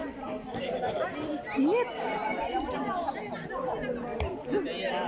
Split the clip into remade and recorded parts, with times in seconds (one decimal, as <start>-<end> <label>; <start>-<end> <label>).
0.0-5.1 recorded